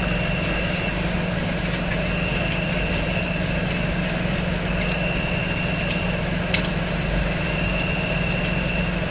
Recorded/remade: recorded